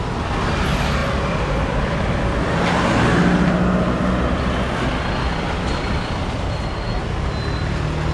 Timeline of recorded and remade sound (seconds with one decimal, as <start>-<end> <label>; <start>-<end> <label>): 0.0-1.0 recorded; 1.0-2.4 remade; 2.4-8.1 recorded